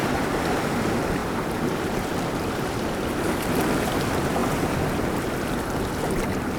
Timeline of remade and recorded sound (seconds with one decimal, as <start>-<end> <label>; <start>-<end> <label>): 0.0-0.6 remade; 0.6-1.2 recorded; 1.2-3.8 remade; 3.8-6.6 recorded